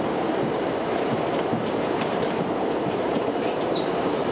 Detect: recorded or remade remade